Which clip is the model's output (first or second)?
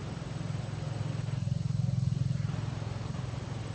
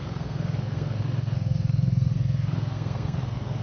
second